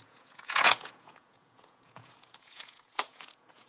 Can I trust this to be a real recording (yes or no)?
no